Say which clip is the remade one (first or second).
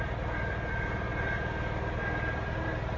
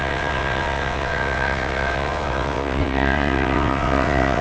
second